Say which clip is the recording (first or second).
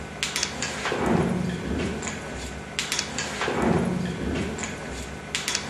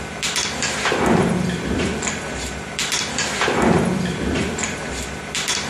first